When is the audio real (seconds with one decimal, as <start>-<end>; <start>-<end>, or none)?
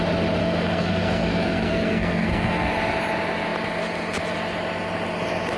0.0-0.4; 2.7-5.6